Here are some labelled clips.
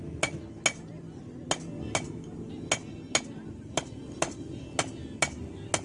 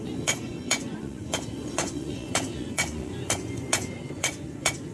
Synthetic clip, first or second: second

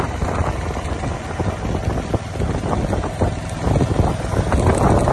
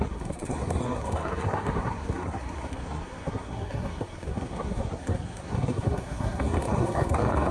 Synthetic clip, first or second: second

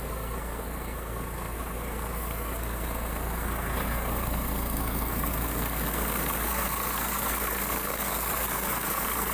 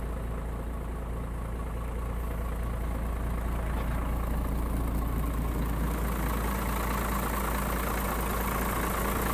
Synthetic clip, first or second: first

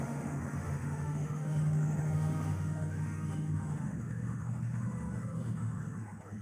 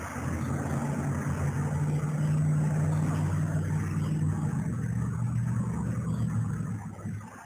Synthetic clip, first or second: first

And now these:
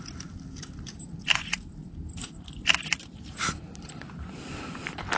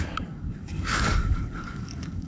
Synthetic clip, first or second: second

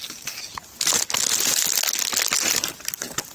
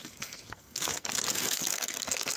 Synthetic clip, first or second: second